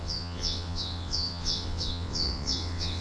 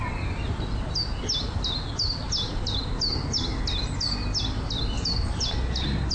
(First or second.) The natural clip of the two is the second